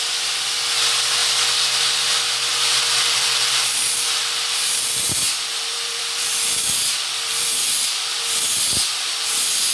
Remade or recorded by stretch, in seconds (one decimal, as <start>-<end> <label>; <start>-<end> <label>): 0.0-2.5 recorded; 2.5-4.2 remade; 4.2-5.5 recorded; 5.5-9.7 remade